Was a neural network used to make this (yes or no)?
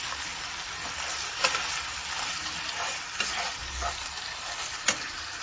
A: no